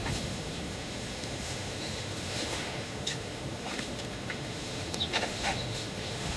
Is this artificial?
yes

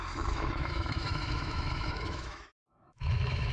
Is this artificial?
yes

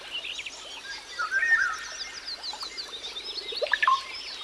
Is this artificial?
no